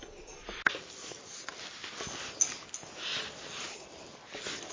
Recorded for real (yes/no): yes